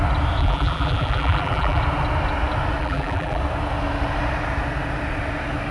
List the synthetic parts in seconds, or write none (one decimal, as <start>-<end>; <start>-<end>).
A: 0.4-1.8; 2.8-3.4